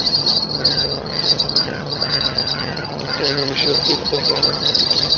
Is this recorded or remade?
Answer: remade